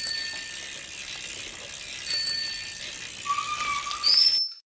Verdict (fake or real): real